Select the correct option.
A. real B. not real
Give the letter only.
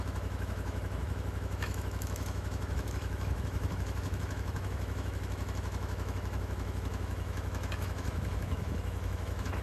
B